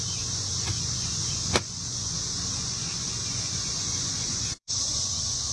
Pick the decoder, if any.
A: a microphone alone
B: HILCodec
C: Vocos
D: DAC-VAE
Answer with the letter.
C